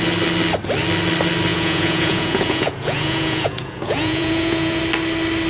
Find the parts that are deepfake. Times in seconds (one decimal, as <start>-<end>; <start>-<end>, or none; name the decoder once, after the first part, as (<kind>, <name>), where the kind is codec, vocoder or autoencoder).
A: 1.5-4.8 (vocoder, Vocos)

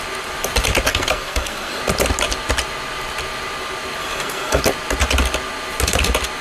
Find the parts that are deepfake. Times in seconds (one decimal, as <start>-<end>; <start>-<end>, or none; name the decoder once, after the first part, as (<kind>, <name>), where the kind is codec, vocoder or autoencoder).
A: 0.9-1.8 (codec, SNAC); 4.0-4.6

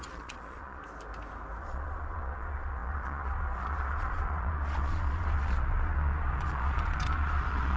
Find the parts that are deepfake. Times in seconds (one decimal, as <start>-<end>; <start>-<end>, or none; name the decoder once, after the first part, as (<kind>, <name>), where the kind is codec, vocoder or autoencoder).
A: 0.0-0.8 (vocoder, Vocos); 1.6-7.8